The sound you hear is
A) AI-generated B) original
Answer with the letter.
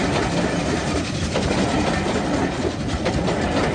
B